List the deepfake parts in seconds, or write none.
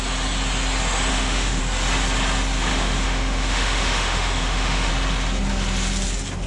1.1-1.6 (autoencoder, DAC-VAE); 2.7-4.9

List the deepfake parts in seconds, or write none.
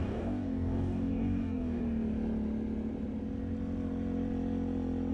0.0-1.8 (codec, DAC)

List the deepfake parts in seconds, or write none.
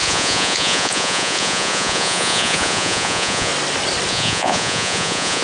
0.0-3.5 (vocoder, Vocos); 4.1-5.4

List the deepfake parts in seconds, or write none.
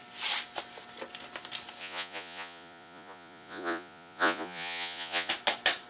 1.8-5.3 (vocoder, Vocos)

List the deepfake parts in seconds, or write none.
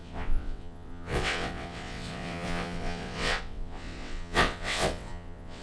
0.0-5.6 (vocoder, WaveNeXt)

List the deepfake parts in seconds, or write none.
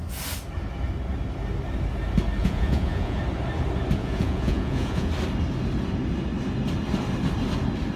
2.4-3.2 (vocoder, Vocos); 4.0-5.1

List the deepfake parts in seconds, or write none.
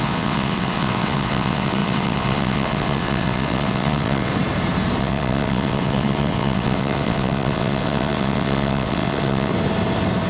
0.0-4.3 (vocoder, WaveNeXt); 5.0-9.5